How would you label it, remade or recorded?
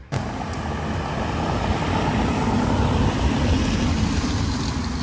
recorded